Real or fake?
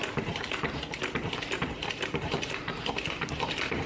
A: real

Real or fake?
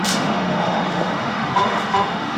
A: fake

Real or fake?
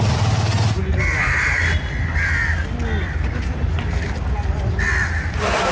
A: real